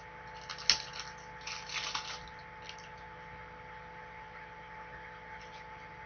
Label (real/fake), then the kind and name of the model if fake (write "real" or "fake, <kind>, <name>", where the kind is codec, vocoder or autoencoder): real